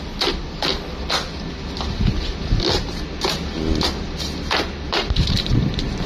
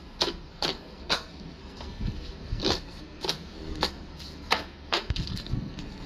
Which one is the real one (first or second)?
first